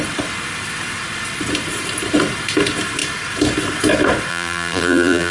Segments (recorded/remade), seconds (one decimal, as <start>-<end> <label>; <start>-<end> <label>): 0.0-4.3 recorded; 4.3-5.3 remade